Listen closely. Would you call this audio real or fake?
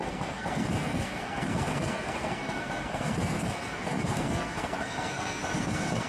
fake